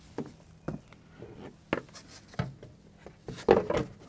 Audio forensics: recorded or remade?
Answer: recorded